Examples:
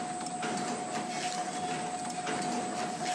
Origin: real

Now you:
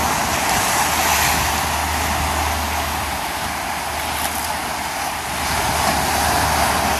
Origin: real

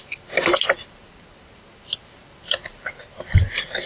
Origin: fake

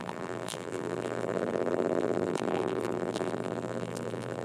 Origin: fake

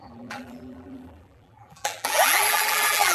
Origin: fake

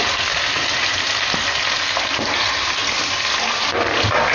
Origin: real